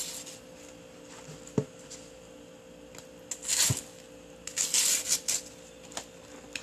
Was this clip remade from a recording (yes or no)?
no